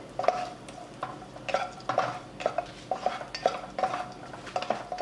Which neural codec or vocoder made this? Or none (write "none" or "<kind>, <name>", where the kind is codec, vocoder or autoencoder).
none